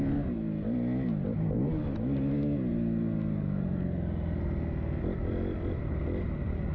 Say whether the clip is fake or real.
real